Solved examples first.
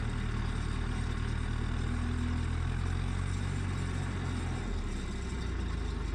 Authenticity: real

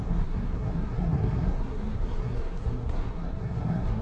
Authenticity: fake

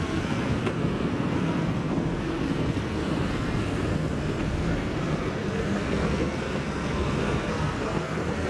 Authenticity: fake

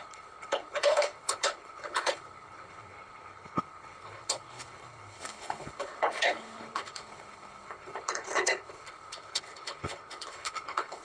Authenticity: fake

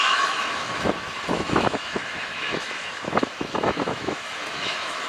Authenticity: fake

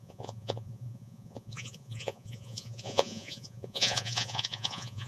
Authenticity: fake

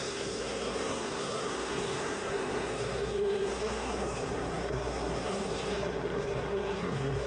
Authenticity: fake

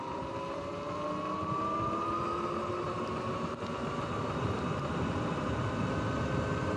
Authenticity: real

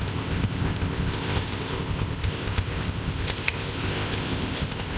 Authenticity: fake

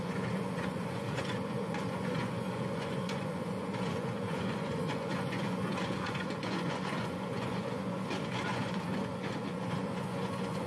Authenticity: fake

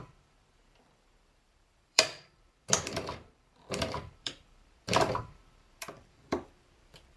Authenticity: fake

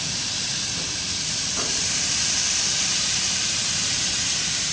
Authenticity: fake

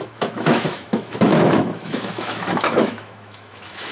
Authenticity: fake